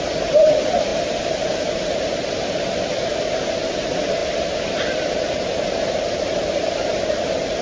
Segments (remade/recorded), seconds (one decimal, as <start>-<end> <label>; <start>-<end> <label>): 0.0-4.2 remade; 4.2-5.7 recorded; 5.7-7.6 remade